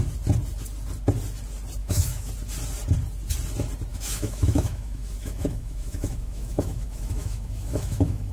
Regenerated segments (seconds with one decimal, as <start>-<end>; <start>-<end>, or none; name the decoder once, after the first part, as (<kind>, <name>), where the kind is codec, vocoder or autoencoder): 1.8-2.3 (autoencoder, DAC-VAE); 3.9-8.3